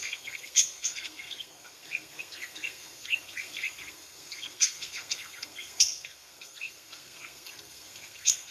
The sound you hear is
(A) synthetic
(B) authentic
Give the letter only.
A